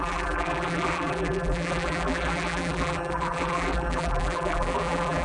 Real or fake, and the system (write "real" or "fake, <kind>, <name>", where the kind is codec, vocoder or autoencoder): fake, vocoder, BigVGAN v2